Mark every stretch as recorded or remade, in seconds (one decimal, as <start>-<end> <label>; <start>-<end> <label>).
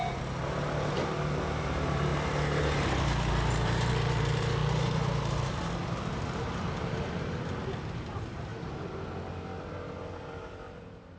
0.0-0.9 recorded; 0.9-2.1 remade; 2.1-3.0 recorded; 3.0-8.5 remade; 8.5-9.7 recorded; 9.7-11.2 remade